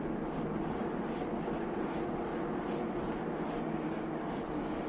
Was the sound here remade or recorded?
recorded